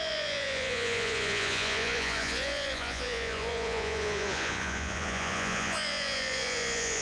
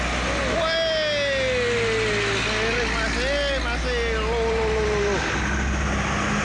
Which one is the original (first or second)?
second